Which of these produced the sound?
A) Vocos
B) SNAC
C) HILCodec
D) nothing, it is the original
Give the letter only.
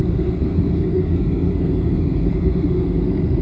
B